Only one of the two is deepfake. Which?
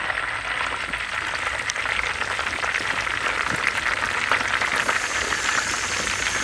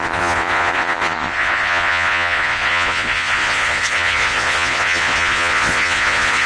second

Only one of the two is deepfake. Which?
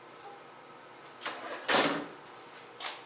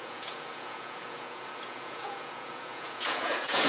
second